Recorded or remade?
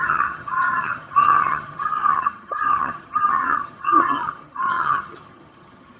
remade